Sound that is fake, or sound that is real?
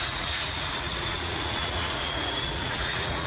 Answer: fake